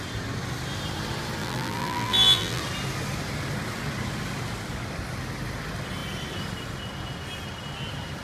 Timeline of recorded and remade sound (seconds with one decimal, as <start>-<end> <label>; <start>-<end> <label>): 0.0-1.4 recorded; 1.4-2.6 remade; 2.6-8.2 recorded